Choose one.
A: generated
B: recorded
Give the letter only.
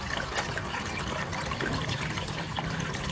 B